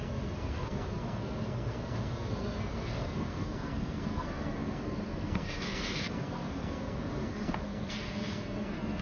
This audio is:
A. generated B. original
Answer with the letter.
A